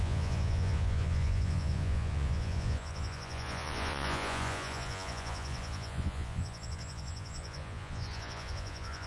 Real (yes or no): no